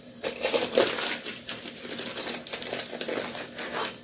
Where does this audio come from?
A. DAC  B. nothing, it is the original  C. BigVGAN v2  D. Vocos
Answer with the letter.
C